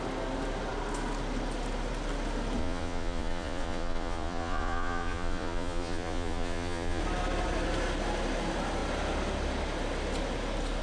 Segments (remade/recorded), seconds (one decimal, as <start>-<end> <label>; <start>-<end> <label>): 0.0-2.6 recorded; 2.6-7.0 remade; 7.0-10.8 recorded

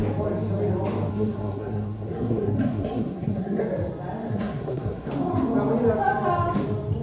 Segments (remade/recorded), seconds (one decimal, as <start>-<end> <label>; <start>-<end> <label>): 0.0-1.1 recorded; 1.1-3.6 remade; 3.6-4.3 recorded; 4.3-5.1 remade; 5.1-7.0 recorded

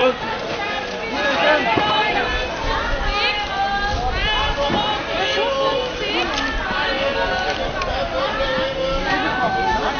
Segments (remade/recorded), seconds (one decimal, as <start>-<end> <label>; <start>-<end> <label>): 0.0-2.0 recorded; 2.0-2.8 remade; 2.8-4.2 recorded; 4.2-5.0 remade; 5.0-10.0 recorded

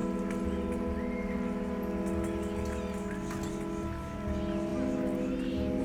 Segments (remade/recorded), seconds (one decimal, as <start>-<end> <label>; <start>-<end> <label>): 0.0-5.8 recorded